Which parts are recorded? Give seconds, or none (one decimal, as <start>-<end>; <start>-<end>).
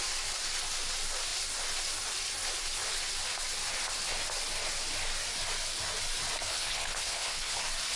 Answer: 0.0-6.5; 7.6-8.0